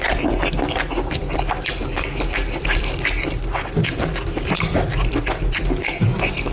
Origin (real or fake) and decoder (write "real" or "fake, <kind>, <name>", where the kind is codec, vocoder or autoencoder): real